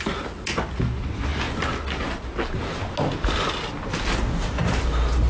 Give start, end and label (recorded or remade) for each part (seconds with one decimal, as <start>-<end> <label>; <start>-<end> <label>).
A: 0.0-5.3 recorded